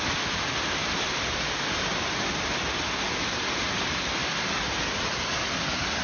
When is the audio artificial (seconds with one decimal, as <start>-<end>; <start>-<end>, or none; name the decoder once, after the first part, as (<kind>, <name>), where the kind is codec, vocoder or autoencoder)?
0.8-2.2 (vocoder, BigVGAN v2)